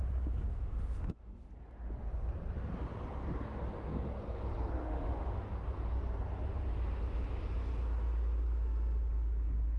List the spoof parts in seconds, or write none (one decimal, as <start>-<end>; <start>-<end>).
0.5-1.5; 4.8-5.5